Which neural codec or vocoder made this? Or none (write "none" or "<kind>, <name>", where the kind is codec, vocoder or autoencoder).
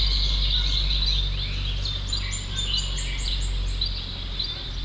none